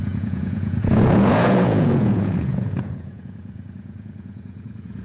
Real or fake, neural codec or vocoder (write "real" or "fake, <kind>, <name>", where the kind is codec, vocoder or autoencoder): fake, vocoder, Vocos